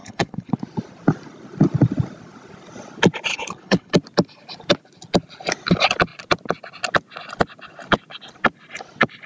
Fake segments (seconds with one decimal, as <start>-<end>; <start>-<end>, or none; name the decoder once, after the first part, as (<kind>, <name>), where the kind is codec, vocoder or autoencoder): 0.0-0.5 (codec, HILCodec); 3.3-3.9